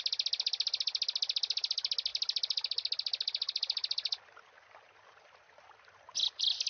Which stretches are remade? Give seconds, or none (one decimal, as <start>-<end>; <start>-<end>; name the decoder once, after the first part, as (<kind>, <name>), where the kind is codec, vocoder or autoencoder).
none